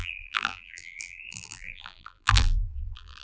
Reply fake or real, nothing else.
fake